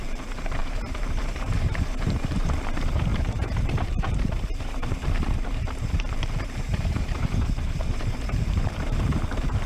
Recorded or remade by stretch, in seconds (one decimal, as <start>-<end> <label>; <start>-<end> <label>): 0.0-9.7 remade